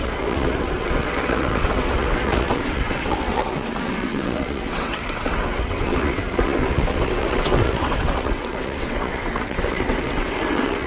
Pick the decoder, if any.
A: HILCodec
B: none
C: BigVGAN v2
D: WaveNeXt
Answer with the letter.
D